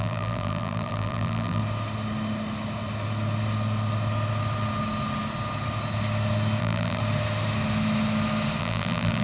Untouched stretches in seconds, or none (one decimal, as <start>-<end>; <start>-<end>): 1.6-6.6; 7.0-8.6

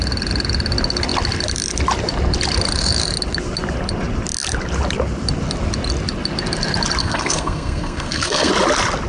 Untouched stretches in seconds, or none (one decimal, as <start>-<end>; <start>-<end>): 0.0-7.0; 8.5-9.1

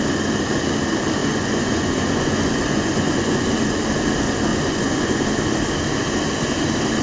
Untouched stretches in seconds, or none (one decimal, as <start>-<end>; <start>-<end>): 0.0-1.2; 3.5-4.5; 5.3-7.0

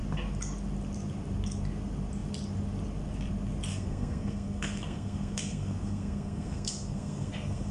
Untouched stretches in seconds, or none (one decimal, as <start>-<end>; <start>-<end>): 0.0-3.7

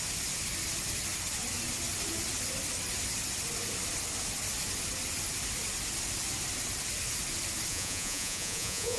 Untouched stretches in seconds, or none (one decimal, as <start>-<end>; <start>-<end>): 0.0-7.7

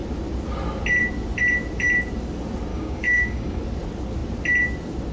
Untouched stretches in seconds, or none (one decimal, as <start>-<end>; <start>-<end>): 0.0-2.7; 3.6-5.1

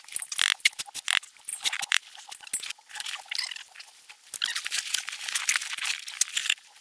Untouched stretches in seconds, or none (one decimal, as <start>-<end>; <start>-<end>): 0.0-6.8